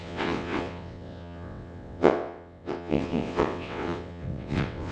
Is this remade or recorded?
remade